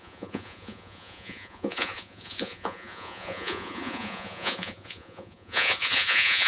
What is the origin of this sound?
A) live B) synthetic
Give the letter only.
B